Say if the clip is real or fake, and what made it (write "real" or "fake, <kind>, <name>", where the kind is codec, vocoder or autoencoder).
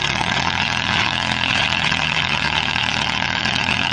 fake, vocoder, WaveNeXt